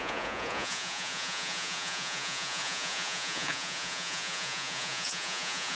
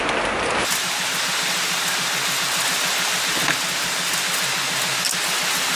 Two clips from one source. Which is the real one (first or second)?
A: second